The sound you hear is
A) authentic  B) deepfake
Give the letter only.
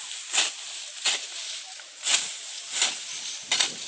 A